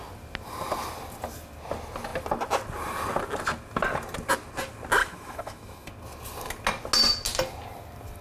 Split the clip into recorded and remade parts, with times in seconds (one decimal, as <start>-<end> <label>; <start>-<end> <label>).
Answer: 0.0-5.0 recorded; 5.0-5.9 remade; 5.9-8.2 recorded